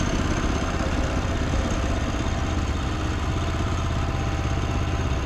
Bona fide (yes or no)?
yes